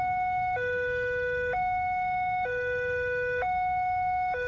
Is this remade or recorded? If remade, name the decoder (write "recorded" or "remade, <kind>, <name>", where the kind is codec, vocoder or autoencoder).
remade, autoencoder, DAC-VAE